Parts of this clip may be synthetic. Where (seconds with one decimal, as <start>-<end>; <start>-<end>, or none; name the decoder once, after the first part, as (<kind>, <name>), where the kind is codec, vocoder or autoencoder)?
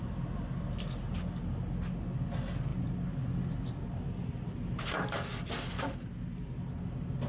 none